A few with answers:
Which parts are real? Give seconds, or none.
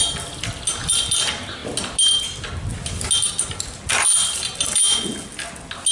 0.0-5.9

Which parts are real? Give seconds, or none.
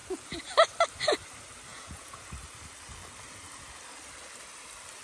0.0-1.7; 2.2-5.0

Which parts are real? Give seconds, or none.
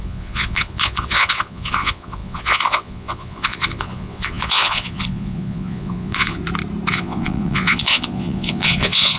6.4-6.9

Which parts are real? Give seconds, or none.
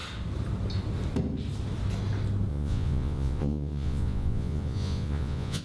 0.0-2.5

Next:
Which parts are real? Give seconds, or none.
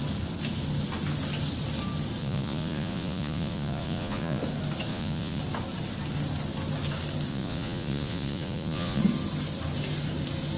0.0-2.2; 4.4-4.9; 5.4-7.3; 9.0-10.6